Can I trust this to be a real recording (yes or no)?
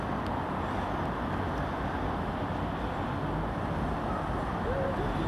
yes